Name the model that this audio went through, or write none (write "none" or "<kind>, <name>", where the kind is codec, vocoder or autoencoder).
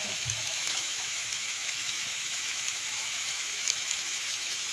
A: autoencoder, DAC-VAE